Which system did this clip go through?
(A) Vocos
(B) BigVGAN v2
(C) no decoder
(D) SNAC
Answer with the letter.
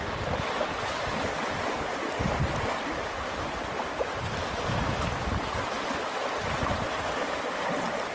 B